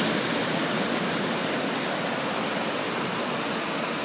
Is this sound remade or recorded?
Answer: recorded